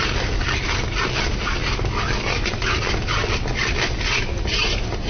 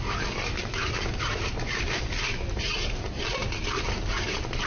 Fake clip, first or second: second